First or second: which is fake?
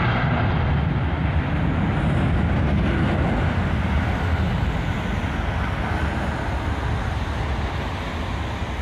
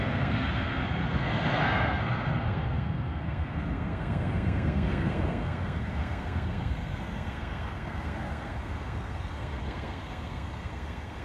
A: second